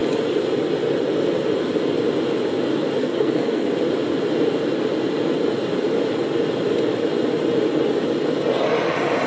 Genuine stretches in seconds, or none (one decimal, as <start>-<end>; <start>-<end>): 0.0-3.0; 3.7-9.3